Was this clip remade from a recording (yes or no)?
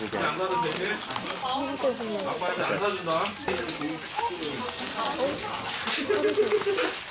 no